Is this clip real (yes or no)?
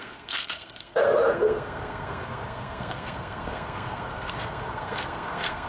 no